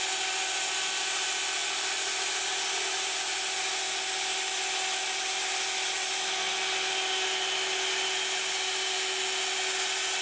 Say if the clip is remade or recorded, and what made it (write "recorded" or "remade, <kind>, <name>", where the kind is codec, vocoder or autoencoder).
recorded